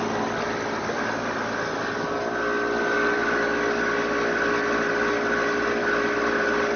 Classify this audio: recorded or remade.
recorded